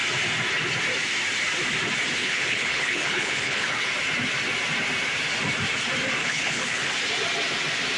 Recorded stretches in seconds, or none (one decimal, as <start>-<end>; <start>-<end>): 0.0-2.2; 3.7-6.2; 6.9-8.0